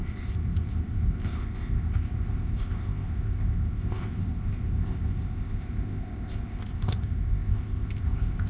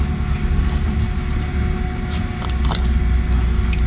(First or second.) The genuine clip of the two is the second